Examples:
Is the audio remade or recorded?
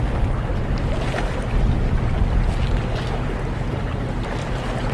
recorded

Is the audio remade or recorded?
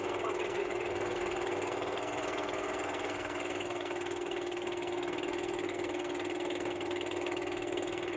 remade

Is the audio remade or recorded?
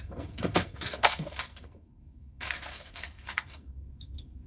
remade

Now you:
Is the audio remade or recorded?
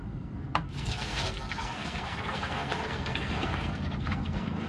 remade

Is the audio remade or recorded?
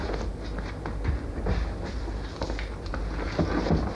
recorded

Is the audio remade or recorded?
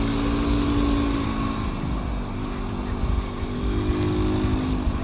recorded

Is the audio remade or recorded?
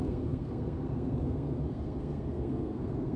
remade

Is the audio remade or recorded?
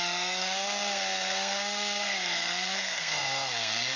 remade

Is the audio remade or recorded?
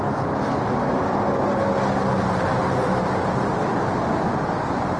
recorded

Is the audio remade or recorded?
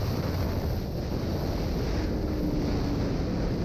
recorded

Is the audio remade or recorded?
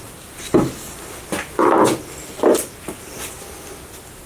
recorded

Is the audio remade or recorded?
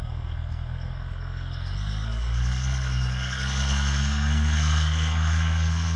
remade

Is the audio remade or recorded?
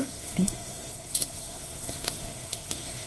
remade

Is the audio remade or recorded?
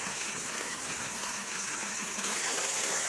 remade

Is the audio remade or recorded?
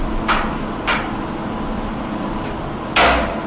recorded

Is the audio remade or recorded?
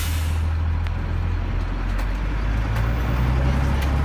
recorded